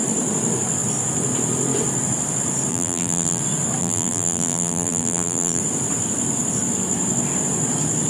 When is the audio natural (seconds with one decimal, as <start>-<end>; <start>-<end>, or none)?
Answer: 0.0-2.7; 3.4-3.8; 5.6-8.1